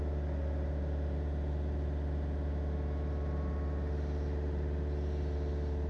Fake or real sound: real